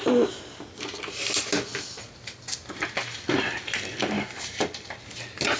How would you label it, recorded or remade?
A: recorded